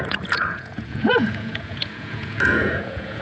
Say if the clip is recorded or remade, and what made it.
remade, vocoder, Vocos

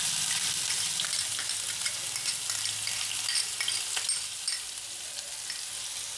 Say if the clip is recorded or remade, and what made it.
recorded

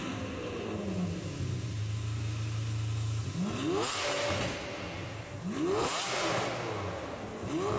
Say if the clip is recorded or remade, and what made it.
recorded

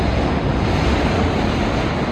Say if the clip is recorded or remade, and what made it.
recorded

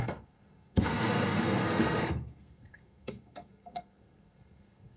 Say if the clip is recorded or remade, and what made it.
remade, codec, SNAC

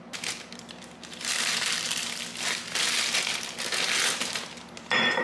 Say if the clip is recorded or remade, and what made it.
recorded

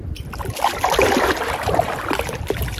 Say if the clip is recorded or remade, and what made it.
recorded